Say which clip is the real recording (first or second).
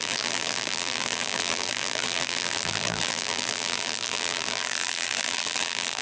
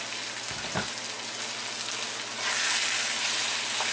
second